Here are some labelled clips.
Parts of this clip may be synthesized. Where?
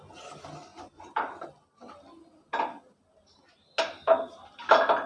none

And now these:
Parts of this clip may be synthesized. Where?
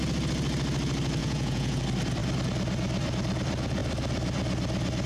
1.2-1.8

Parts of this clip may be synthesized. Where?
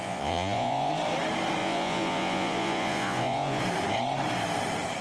0.0-0.9; 1.6-3.6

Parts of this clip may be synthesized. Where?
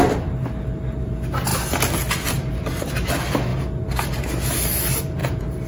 5.2-5.7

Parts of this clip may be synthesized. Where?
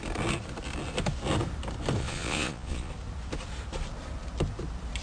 2.0-2.9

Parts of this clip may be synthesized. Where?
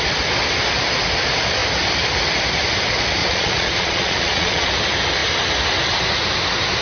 3.2-4.7